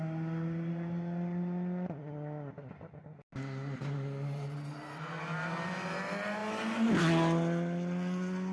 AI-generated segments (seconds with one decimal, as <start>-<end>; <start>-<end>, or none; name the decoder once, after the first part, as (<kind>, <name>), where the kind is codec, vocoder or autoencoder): none